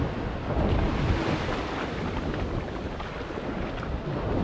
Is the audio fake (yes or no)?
no